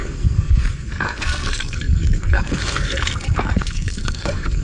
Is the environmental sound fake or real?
fake